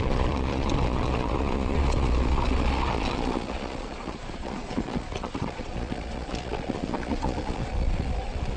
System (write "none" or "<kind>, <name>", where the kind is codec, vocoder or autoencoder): vocoder, Vocos